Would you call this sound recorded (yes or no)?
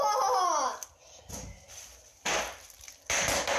yes